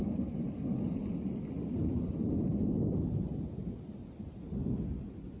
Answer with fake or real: real